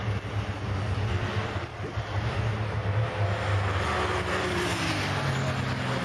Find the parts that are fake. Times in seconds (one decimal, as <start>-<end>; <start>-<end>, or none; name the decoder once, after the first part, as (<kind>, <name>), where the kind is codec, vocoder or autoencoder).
1.7-2.4 (vocoder, BigVGAN v2)